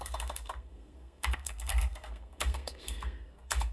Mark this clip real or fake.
fake